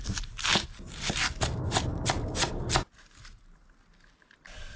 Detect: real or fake real